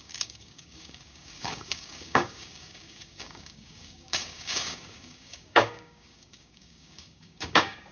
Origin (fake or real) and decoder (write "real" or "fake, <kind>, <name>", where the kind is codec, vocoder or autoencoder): fake, codec, DAC